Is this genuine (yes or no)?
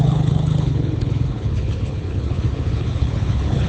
no